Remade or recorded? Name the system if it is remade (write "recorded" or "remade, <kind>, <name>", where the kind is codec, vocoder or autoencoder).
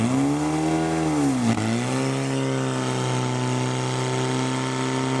recorded